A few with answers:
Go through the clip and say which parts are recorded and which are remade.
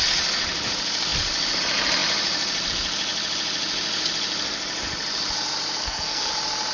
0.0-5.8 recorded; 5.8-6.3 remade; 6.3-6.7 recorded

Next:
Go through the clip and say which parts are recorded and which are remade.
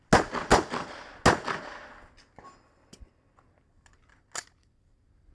0.0-5.3 recorded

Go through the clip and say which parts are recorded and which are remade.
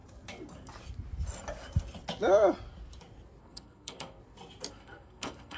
0.0-3.4 recorded; 3.4-4.2 remade; 4.2-4.7 recorded; 4.7-5.6 remade